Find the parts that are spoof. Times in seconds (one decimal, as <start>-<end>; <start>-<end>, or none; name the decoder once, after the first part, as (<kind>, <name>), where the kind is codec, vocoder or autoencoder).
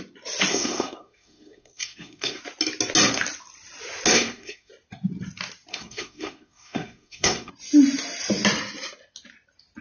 0.5-2.4 (codec, SNAC); 4.1-4.7; 5.7-7.5